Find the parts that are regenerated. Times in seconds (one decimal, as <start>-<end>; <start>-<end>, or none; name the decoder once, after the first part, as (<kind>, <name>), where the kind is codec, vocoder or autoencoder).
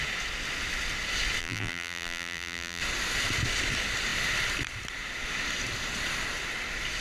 1.4-2.8 (vocoder, BigVGAN v2)